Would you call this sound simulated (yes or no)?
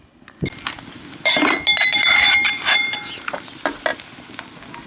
no